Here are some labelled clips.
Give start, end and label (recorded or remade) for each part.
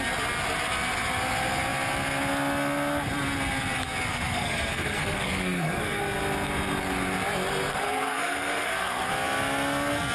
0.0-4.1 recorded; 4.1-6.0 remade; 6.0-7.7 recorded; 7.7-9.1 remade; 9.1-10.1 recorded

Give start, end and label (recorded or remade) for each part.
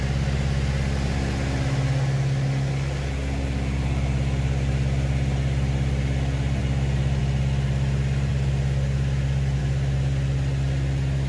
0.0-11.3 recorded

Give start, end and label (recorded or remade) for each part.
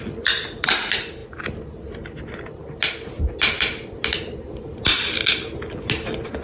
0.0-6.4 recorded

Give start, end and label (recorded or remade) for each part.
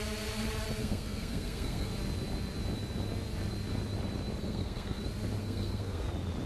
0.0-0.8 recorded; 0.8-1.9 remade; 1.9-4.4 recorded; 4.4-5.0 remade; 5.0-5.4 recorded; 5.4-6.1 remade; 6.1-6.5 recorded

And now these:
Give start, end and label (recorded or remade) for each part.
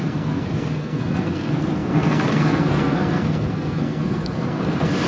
0.0-5.1 remade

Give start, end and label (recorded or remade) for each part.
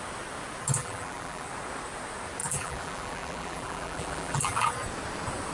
0.0-0.8 recorded; 0.8-1.5 remade; 1.5-2.4 recorded; 2.4-4.7 remade; 4.7-5.5 recorded